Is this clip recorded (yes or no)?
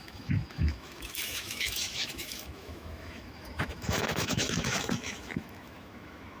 no